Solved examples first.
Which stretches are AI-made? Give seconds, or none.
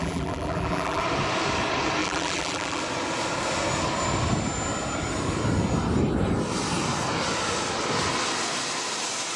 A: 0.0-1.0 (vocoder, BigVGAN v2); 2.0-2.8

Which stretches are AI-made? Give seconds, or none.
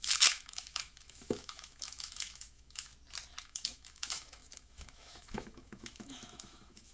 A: 0.0-2.9 (autoencoder, DAC-VAE); 3.4-6.9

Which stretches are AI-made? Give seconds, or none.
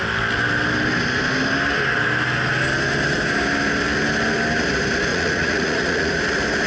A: 5.1-6.2 (vocoder, Vocos)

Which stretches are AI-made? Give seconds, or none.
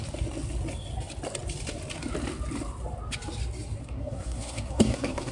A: 3.8-5.3 (codec, SNAC)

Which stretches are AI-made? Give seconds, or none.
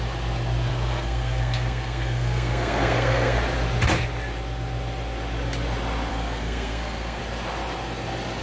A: 0.7-3.4 (codec, SNAC); 6.1-7.2